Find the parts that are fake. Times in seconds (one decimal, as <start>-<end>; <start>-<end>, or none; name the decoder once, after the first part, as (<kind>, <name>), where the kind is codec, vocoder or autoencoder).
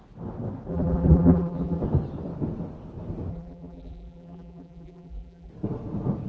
0.7-1.8 (vocoder, BigVGAN v2); 3.3-5.5